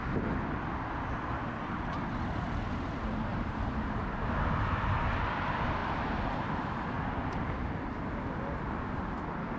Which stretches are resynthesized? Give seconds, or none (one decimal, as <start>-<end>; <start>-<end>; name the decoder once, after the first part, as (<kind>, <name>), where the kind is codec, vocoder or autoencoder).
3.3-4.1 (vocoder, BigVGAN v2)